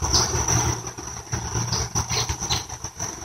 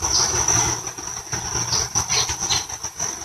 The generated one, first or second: first